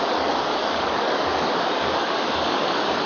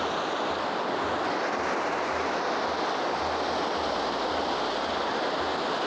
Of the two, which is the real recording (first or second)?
second